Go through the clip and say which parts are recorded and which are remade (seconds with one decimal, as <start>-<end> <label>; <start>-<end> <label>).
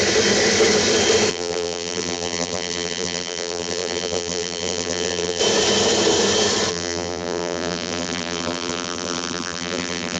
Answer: 0.0-1.3 recorded; 1.3-5.4 remade; 5.4-6.7 recorded; 6.7-10.2 remade